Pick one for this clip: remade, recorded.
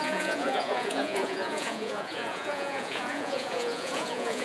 remade